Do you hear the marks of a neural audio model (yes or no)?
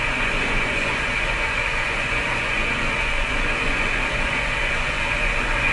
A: yes